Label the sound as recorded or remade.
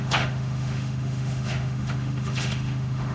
remade